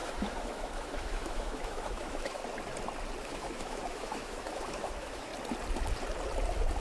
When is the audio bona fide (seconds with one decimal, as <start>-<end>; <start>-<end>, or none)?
2.4-3.2; 5.3-6.8